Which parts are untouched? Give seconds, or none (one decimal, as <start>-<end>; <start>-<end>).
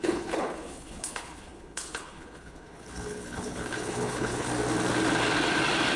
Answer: 4.5-6.0